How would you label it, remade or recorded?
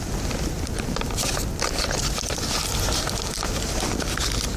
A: recorded